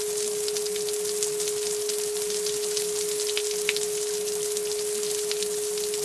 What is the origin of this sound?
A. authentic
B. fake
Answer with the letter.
A